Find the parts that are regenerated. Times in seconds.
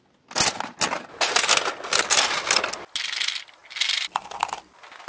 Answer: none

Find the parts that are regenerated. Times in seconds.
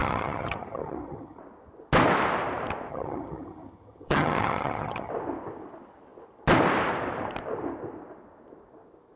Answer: 0.0-1.4; 2.9-5.1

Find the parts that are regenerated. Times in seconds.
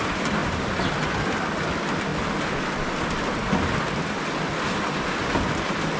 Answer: none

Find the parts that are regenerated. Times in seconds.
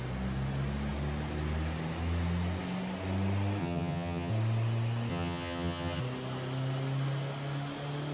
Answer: 3.6-4.3; 5.1-6.0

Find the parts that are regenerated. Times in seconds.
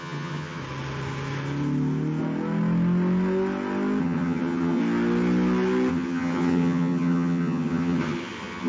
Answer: 0.0-0.6; 4.0-4.8; 5.9-8.7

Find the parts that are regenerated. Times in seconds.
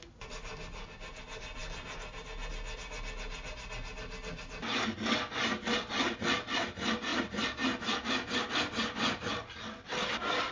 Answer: none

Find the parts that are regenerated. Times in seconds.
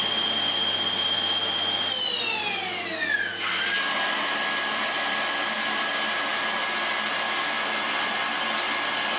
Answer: none